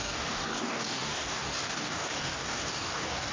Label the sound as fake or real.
fake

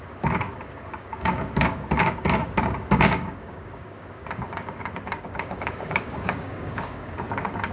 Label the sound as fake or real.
fake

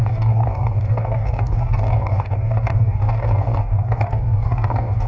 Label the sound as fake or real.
fake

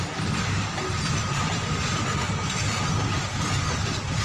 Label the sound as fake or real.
real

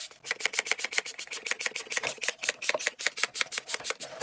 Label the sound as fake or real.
real